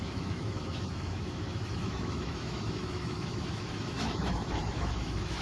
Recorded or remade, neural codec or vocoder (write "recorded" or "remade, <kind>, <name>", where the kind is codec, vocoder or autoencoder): remade, autoencoder, DAC-VAE